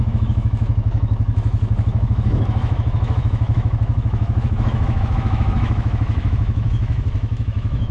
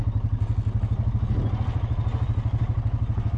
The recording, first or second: second